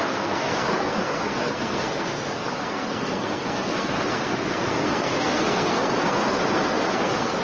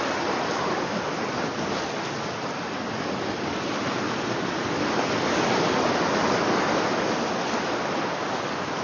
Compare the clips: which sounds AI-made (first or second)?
first